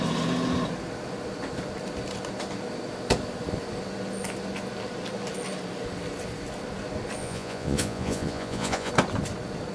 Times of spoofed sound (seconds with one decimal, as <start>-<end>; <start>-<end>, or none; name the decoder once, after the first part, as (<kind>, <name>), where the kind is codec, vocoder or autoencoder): 7.2-8.9 (vocoder, Vocos)